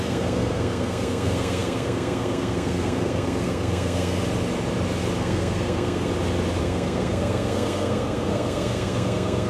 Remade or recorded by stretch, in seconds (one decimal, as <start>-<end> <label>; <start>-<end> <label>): 0.0-4.2 remade; 4.2-5.2 recorded; 5.2-6.1 remade; 6.1-6.6 recorded; 6.6-9.5 remade